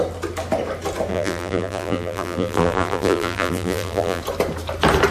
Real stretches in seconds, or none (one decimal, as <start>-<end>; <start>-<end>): 0.0-1.1; 4.2-5.1